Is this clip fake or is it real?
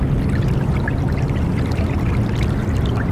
real